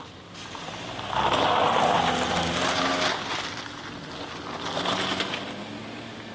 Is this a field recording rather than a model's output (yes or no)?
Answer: yes